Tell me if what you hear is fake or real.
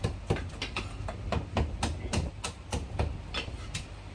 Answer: real